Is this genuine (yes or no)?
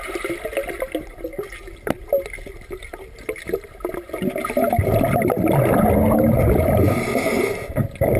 yes